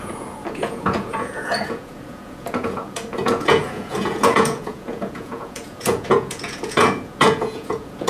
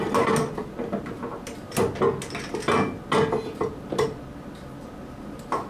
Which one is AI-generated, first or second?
first